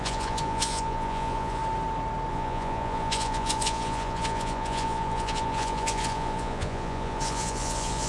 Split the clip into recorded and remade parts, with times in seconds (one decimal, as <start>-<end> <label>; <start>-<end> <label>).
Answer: 0.0-1.6 remade; 1.6-2.3 recorded; 2.3-8.1 remade